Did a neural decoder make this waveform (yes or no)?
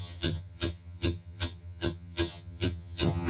yes